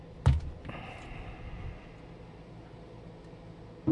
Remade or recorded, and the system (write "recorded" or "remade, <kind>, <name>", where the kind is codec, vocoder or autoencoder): recorded